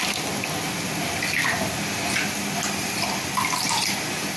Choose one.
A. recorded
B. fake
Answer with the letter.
A